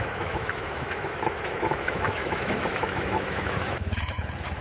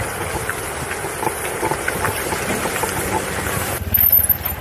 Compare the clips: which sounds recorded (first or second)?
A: second